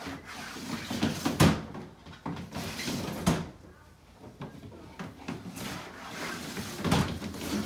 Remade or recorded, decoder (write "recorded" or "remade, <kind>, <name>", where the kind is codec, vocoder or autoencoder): recorded